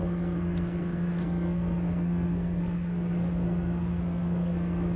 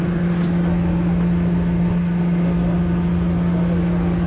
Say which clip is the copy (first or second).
first